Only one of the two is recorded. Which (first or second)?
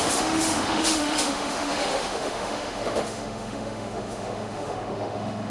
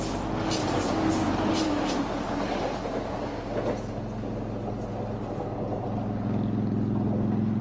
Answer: second